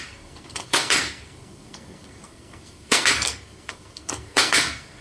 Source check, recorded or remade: remade